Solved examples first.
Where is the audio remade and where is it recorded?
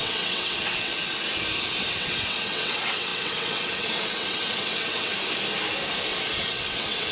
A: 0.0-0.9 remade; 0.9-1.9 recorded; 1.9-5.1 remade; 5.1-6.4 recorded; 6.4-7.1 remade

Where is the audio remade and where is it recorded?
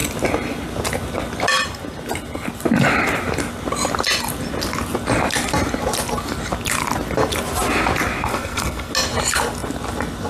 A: 0.0-8.3 recorded; 8.3-8.9 remade; 8.9-10.3 recorded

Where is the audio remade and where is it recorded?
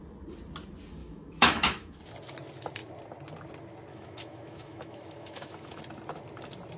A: 0.0-1.0 recorded; 1.0-2.0 remade; 2.0-3.9 recorded; 3.9-5.8 remade; 5.8-6.8 recorded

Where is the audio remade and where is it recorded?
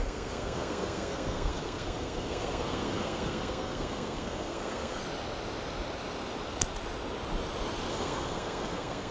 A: 0.0-5.0 remade; 5.0-7.9 recorded; 7.9-9.1 remade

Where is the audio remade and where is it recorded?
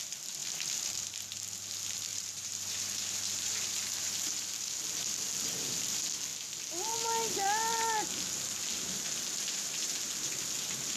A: 0.0-2.1 recorded; 2.1-4.5 remade; 4.5-11.0 recorded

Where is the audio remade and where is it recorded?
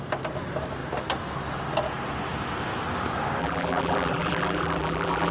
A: 0.0-3.4 recorded; 3.4-5.3 remade